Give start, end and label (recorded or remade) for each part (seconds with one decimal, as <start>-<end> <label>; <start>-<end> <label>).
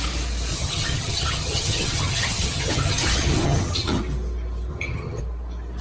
0.0-0.5 recorded; 0.5-4.0 remade; 4.0-4.7 recorded; 4.7-5.2 remade; 5.2-5.8 recorded